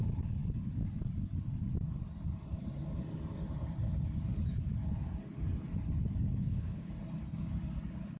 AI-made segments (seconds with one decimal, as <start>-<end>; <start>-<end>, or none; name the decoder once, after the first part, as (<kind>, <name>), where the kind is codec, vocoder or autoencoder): 6.4-6.9 (codec, HILCodec)